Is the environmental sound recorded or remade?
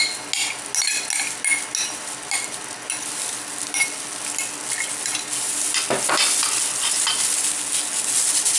recorded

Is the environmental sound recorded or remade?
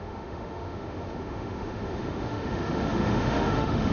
remade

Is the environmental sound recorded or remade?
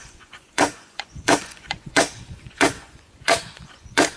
remade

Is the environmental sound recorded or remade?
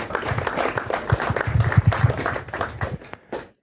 recorded